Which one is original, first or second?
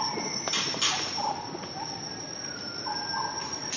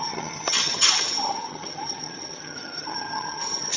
first